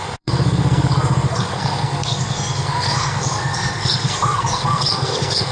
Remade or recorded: remade